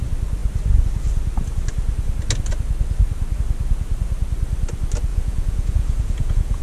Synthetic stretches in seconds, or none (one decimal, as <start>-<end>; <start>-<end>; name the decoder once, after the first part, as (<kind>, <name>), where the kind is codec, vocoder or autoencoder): 5.1-6.6 (vocoder, Vocos)